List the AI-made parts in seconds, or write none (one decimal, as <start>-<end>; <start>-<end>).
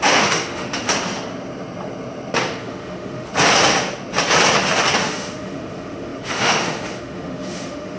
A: 0.0-0.9; 2.5-3.3; 5.0-8.0